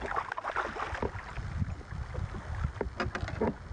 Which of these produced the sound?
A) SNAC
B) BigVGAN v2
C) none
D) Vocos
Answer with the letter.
C